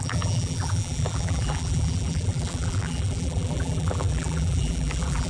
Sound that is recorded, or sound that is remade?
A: remade